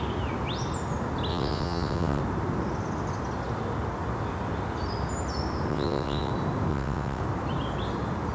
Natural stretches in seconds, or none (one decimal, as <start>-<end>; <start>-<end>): 0.0-1.3; 2.2-5.7; 6.3-6.7; 7.2-8.3